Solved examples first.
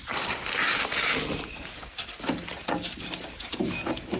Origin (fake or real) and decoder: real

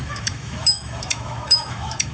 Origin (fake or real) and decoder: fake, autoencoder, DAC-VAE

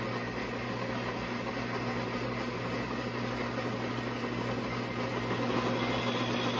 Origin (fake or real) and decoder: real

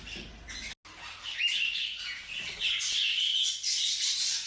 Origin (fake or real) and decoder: real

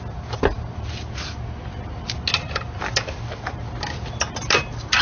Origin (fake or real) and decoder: real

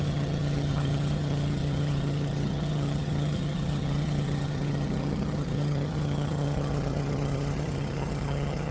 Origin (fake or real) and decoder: fake, vocoder, HiFi-GAN